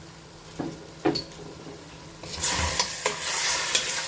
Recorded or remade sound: recorded